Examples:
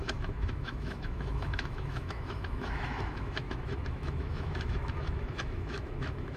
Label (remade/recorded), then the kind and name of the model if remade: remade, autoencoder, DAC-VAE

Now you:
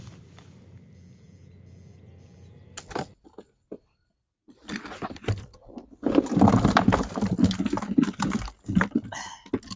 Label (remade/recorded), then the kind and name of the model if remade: recorded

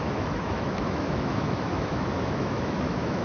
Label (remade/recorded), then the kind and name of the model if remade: remade, autoencoder, DAC-VAE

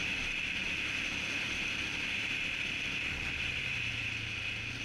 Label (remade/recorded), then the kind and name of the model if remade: recorded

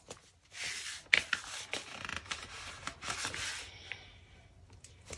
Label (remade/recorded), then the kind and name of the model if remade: recorded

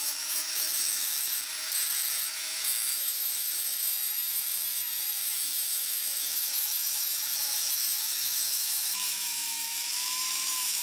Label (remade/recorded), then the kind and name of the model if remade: remade, autoencoder, DAC-VAE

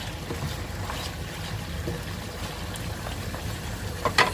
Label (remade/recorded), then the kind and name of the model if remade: recorded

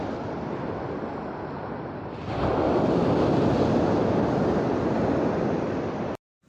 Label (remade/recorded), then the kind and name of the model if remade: recorded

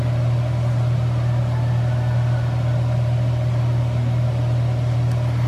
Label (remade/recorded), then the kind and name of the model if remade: recorded